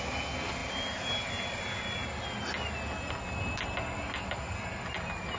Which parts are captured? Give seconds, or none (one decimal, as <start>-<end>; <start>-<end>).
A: 0.0-5.4